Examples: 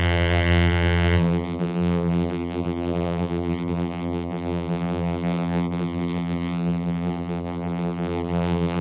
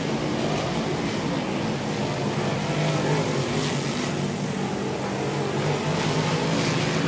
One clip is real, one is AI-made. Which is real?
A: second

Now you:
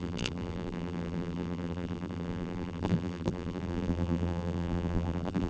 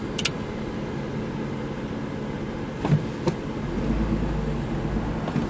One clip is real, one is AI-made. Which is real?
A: second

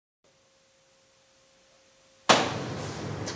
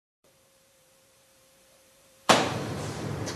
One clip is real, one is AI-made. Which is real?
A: first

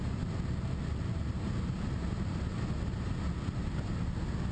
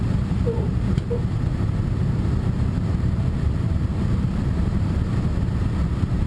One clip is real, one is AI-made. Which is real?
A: first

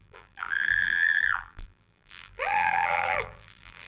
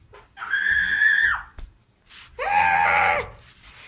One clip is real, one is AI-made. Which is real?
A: second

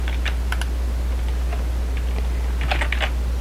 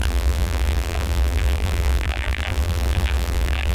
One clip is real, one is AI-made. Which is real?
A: first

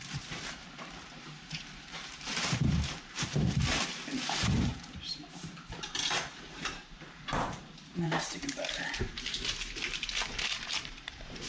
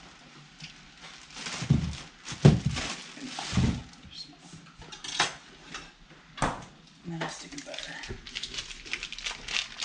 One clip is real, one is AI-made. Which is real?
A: second